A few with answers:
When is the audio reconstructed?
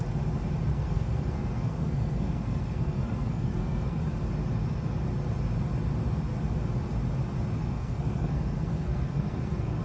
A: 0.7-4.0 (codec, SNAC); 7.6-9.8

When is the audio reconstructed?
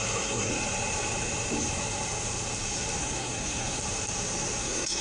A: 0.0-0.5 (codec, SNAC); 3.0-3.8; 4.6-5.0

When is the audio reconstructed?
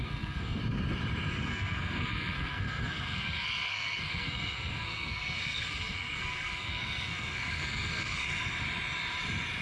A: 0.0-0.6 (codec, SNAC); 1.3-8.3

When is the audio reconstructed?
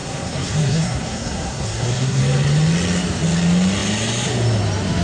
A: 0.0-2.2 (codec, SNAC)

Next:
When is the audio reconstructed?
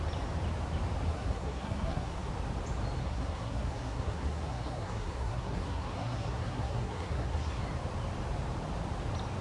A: 1.1-2.3 (codec, SNAC); 3.0-7.6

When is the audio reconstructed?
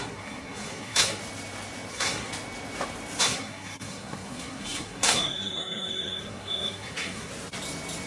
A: 0.0-1.2 (codec, SNAC); 1.9-2.3; 3.2-7.3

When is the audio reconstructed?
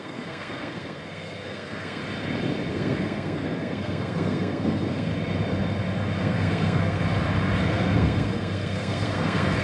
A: 0.0-2.0 (codec, SNAC); 2.7-5.1; 6.2-7.0; 7.6-9.6